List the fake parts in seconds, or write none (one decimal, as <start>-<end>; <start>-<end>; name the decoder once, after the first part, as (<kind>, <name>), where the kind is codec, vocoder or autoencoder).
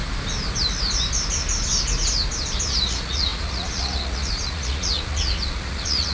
2.7-6.1 (vocoder, Vocos)